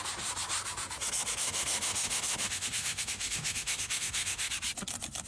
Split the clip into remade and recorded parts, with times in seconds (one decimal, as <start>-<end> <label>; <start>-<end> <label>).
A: 0.0-1.4 recorded; 1.4-4.5 remade; 4.5-5.3 recorded